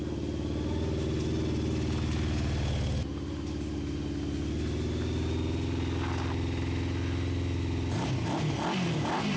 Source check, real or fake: real